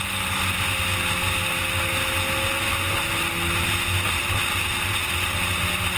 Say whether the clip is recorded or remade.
recorded